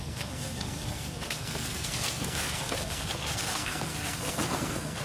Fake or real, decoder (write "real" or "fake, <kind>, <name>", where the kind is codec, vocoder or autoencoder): fake, codec, SNAC